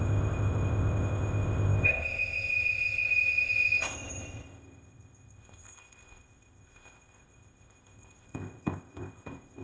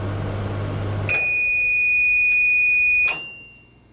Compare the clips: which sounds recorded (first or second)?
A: second